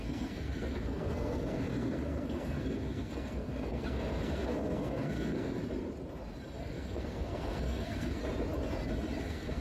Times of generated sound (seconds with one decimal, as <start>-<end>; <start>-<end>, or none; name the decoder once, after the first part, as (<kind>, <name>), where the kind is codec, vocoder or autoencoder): 0.0-5.6 (codec, SNAC); 6.6-8.2; 9.2-9.6